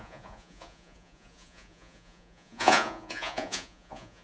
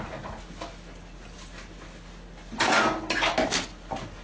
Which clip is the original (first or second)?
second